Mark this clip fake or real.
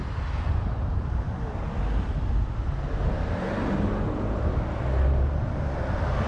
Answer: real